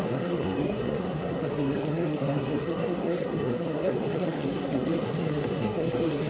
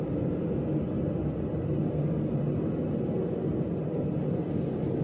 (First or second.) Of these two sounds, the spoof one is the first